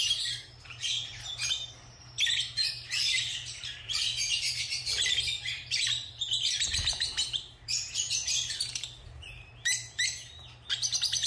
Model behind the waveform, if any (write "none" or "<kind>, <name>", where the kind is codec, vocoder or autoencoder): vocoder, BigVGAN v2